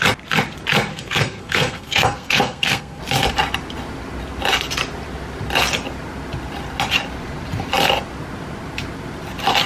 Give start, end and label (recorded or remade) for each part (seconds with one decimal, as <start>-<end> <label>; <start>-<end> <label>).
0.0-0.9 recorded; 0.9-3.0 remade; 3.0-9.7 recorded